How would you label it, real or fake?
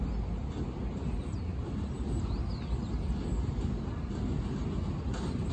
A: real